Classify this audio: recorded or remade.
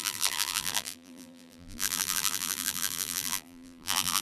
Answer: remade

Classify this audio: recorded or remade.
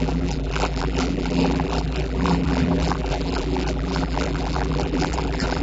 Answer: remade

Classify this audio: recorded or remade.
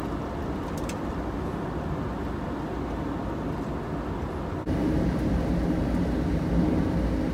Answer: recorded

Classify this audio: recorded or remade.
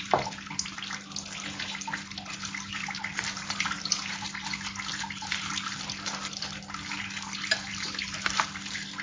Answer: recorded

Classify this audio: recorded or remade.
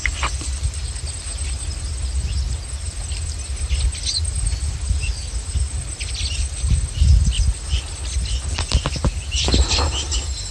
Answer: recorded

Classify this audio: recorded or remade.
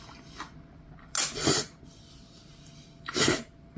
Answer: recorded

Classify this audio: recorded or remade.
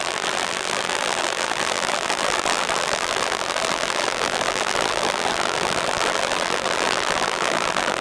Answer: remade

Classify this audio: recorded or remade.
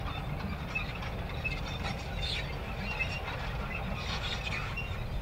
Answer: recorded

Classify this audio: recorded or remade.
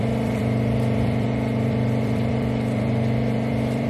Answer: remade